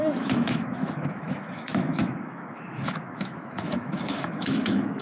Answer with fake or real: fake